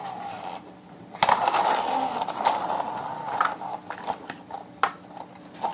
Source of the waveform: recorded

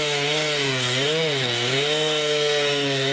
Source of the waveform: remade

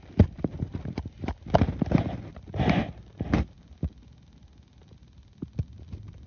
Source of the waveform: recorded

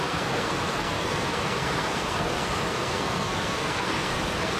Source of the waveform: remade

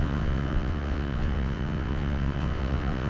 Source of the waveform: remade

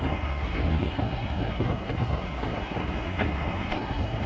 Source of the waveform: remade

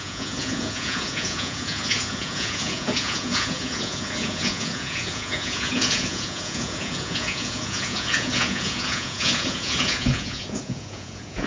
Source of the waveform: remade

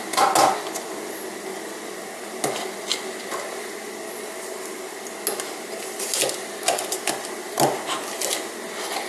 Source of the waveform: recorded